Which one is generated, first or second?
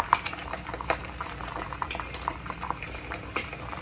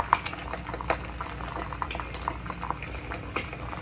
first